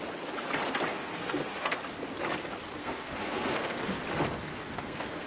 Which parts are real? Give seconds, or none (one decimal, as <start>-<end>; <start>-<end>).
0.0-0.9; 1.8-2.8; 3.8-4.5